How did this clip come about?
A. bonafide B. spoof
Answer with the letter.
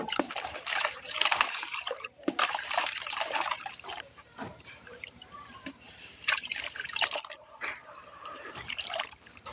B